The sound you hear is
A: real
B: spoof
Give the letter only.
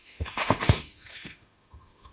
B